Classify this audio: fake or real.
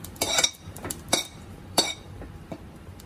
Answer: fake